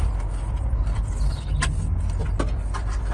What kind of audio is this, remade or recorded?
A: recorded